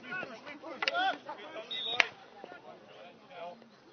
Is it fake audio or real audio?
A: fake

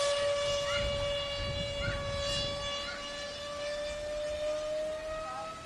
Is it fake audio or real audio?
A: real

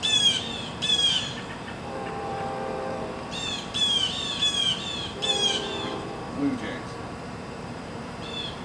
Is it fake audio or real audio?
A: fake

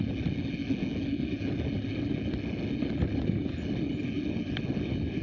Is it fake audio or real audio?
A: real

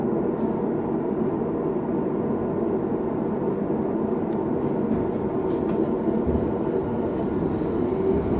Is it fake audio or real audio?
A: real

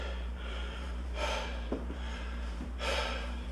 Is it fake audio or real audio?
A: fake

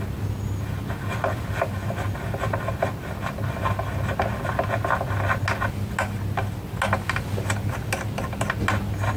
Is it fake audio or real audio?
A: real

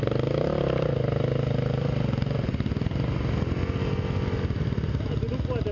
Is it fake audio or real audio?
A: real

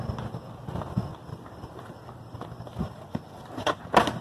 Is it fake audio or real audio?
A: real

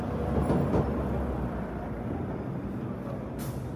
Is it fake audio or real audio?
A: real